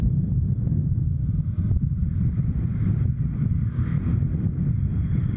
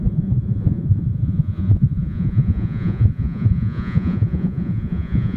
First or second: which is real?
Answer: first